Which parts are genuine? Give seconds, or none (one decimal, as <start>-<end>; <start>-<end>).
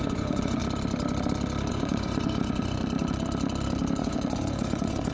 0.6-1.7; 2.8-4.0